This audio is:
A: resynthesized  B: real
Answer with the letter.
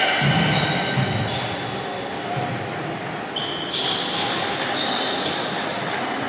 B